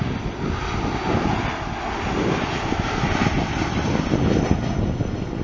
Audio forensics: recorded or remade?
recorded